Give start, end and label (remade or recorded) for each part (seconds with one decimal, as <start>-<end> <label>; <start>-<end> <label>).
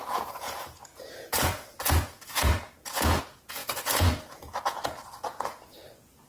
0.0-6.3 remade